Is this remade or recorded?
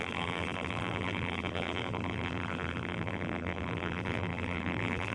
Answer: remade